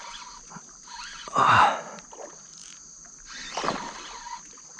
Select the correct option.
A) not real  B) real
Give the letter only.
B